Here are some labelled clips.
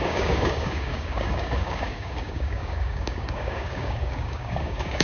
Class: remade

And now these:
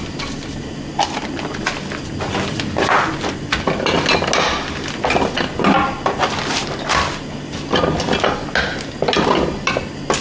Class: recorded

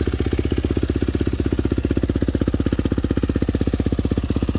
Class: recorded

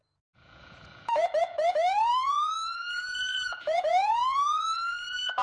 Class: remade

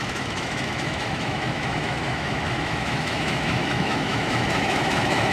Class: remade